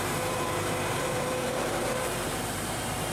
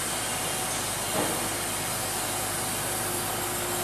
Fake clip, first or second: first